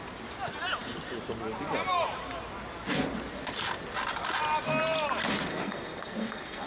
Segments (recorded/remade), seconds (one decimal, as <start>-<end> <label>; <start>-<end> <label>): 0.0-5.5 recorded; 5.5-6.7 remade

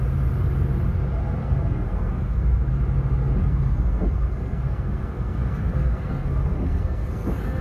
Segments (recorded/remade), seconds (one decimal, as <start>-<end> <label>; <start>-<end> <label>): 0.0-1.4 recorded; 1.4-2.7 remade; 2.7-3.4 recorded; 3.4-7.6 remade